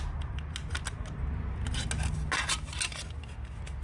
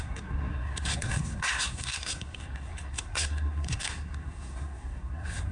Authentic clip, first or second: first